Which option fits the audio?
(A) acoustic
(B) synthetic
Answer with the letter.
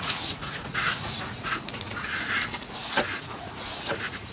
B